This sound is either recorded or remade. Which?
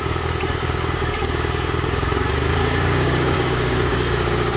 remade